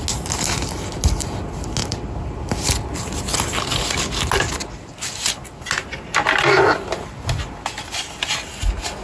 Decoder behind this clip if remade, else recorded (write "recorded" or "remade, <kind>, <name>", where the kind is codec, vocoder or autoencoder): recorded